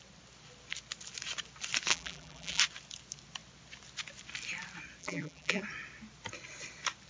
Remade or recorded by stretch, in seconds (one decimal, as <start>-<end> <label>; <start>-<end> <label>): 0.0-1.9 recorded; 1.9-2.6 remade; 2.6-5.0 recorded; 5.0-5.6 remade; 5.6-7.1 recorded